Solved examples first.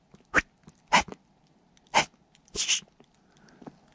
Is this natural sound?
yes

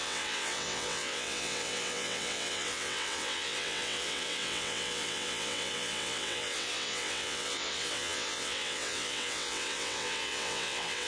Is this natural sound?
no